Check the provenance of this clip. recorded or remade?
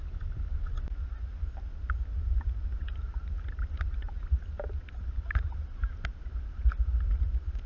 recorded